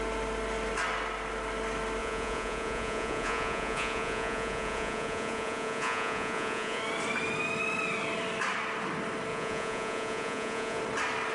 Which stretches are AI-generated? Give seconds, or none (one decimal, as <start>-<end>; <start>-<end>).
2.0-6.8; 9.3-10.8